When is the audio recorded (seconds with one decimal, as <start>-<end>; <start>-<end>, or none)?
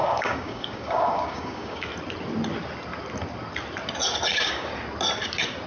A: 1.9-4.3; 4.7-5.7